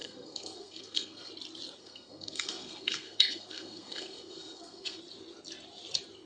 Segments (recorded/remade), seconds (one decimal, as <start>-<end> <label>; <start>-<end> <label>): 0.0-1.3 remade; 1.3-1.8 recorded; 1.8-5.0 remade; 5.0-6.3 recorded